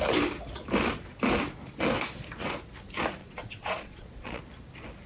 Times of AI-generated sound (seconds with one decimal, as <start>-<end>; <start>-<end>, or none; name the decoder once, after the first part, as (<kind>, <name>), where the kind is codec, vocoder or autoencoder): 3.2-4.4 (vocoder, Vocos)